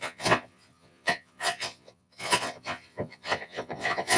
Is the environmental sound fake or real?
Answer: fake